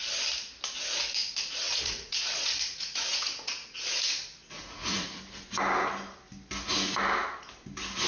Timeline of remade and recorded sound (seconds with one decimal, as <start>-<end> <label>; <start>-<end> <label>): 0.0-1.2 recorded; 1.2-5.2 remade; 5.2-8.1 recorded